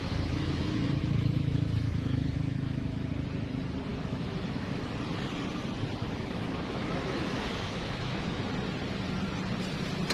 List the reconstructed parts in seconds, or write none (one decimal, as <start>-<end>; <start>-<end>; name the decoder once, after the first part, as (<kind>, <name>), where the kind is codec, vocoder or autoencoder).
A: 0.0-3.1 (autoencoder, DAC-VAE); 3.9-4.9; 6.0-8.4